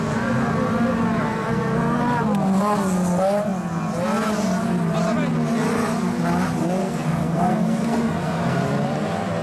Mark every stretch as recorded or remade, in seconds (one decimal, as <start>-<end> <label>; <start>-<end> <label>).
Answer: 0.0-1.3 recorded; 1.3-2.0 remade; 2.0-6.8 recorded; 6.8-8.6 remade; 8.6-9.4 recorded